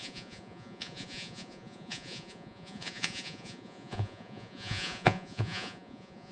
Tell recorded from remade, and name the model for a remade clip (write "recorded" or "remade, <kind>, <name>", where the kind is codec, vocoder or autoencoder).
remade, vocoder, Vocos